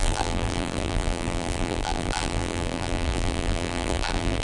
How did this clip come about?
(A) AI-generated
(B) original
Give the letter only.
A